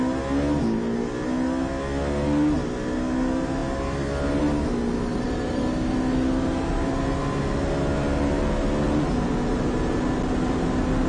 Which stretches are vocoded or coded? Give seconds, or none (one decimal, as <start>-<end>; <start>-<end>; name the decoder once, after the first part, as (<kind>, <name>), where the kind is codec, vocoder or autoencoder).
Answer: 5.1-5.6 (vocoder, BigVGAN v2)